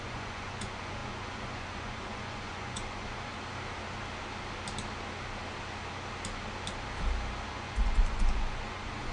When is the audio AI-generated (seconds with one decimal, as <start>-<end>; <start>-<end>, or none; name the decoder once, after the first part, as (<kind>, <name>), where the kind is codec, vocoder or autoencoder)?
0.0-3.3 (vocoder, Vocos); 7.5-9.1